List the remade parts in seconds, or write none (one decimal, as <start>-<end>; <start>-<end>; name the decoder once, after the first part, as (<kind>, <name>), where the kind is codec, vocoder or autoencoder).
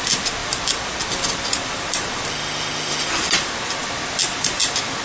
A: 2.3-3.1 (autoencoder, DAC-VAE)